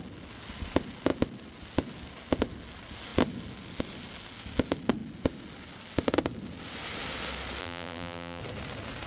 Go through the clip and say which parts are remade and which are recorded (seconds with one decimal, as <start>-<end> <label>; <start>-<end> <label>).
0.0-7.6 recorded; 7.6-8.4 remade; 8.4-9.1 recorded